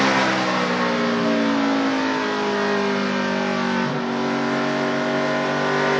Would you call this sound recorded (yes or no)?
yes